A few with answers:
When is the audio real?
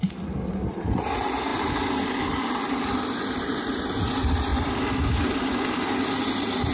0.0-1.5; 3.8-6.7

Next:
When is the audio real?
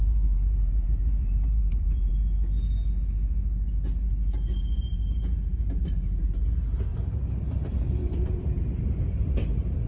2.1-4.8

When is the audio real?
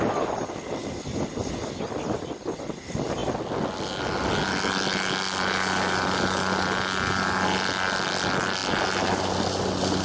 0.0-10.0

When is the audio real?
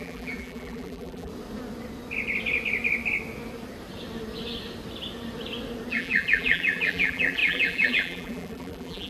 1.3-5.9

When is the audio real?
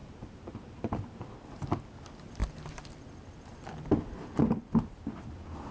1.2-5.7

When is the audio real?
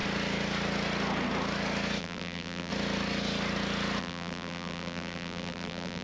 0.0-2.0; 2.7-4.0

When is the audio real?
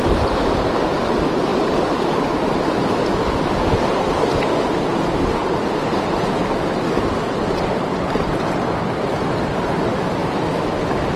0.0-1.5; 3.7-5.4; 6.3-10.2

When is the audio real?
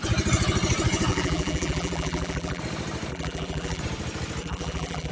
0.0-1.1; 2.6-3.1; 3.8-4.4